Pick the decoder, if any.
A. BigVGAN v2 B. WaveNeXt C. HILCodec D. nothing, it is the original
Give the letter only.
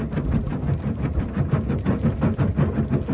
D